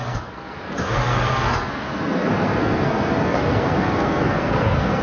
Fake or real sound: fake